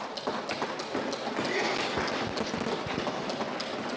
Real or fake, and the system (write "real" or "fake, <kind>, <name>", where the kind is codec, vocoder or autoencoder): real